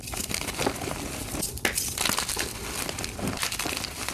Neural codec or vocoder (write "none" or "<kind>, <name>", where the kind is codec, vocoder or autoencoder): none